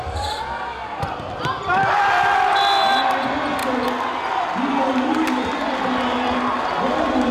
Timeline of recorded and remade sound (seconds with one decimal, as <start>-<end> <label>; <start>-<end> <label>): 0.0-7.3 recorded